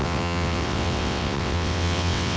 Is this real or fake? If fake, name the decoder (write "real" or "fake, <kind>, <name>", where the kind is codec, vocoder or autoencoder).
fake, vocoder, WaveNeXt